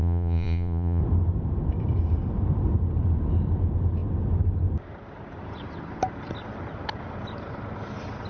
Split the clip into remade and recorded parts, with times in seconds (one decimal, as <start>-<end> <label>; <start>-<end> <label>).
0.0-1.0 remade; 1.0-8.3 recorded